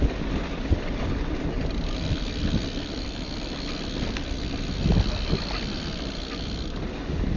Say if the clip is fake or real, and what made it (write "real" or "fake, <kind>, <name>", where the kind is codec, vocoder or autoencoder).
real